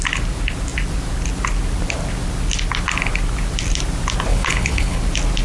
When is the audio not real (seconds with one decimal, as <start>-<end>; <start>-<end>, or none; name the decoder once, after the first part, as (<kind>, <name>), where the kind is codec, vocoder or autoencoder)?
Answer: 4.3-5.0 (codec, HILCodec)

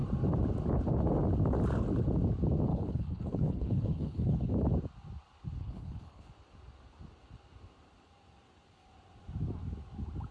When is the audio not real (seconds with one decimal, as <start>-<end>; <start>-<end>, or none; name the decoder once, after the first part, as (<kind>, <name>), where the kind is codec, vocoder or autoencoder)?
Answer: 2.7-4.5 (codec, HILCodec); 5.6-6.3

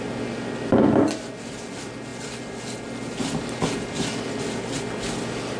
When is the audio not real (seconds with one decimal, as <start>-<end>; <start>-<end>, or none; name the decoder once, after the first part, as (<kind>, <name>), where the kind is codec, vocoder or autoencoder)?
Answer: none

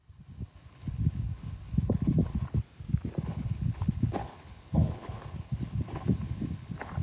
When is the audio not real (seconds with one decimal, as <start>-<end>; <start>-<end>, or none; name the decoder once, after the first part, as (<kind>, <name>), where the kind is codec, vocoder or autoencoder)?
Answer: 0.0-2.6 (codec, HILCodec); 3.2-7.0

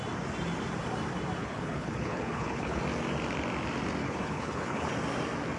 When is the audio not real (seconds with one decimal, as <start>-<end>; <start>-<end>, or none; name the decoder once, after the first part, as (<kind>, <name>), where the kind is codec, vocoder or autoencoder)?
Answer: 1.4-2.8 (codec, HILCodec); 4.0-4.9

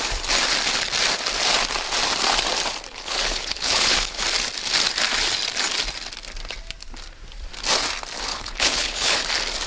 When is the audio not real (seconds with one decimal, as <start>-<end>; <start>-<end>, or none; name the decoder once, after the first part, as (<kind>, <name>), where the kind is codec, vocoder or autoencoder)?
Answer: 2.9-4.2 (codec, HILCodec); 8.3-9.2